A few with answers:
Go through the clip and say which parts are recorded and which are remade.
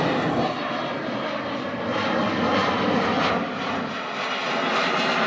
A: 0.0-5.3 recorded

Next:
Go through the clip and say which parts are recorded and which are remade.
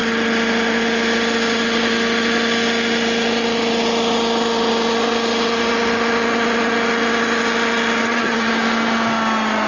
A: 0.0-8.0 recorded; 8.0-8.5 remade; 8.5-9.7 recorded